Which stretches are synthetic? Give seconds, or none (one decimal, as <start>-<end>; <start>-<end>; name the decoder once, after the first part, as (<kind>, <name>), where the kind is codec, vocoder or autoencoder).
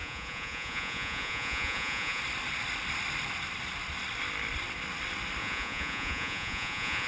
0.0-2.2 (vocoder, Vocos); 5.4-7.1